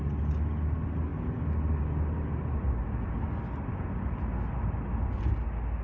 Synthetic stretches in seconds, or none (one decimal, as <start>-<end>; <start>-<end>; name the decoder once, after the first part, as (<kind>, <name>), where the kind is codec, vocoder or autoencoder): none